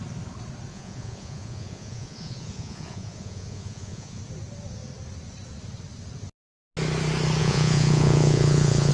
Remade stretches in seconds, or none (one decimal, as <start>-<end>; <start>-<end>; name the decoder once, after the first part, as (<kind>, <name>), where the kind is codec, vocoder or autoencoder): 0.7-4.2 (vocoder, Vocos); 7.4-8.9